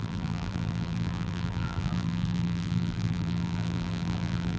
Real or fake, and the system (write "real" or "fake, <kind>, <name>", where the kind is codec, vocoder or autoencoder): fake, vocoder, BigVGAN v2